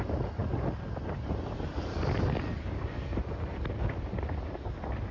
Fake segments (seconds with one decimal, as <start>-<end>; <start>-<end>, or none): none